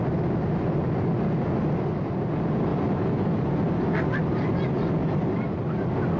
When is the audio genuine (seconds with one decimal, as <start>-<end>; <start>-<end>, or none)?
0.0-6.2